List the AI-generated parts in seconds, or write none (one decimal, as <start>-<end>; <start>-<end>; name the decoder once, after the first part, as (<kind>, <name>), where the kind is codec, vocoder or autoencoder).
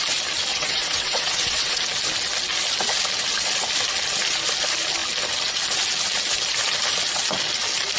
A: 0.5-1.8 (vocoder, WaveNeXt)